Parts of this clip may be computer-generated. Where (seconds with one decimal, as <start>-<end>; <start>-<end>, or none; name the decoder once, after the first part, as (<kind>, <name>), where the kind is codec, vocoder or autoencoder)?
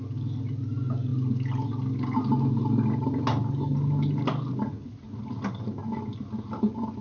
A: none